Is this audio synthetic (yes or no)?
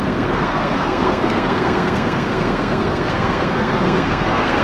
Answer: yes